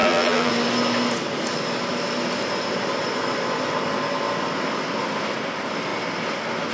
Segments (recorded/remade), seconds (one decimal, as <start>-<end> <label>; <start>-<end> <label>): 0.0-0.5 remade; 0.5-6.7 recorded